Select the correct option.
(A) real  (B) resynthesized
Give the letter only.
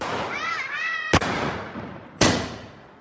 B